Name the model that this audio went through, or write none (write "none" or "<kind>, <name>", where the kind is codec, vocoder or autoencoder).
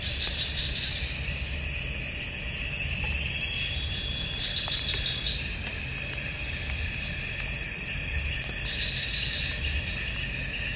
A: none